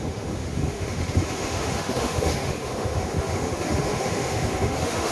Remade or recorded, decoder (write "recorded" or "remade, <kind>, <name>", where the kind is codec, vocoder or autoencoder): remade, autoencoder, DAC-VAE